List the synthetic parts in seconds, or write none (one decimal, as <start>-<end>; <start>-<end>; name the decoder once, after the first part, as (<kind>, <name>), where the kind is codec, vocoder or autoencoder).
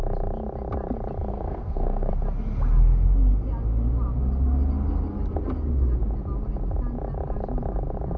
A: 1.3-2.1 (codec, SNAC)